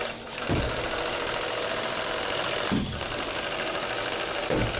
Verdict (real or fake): fake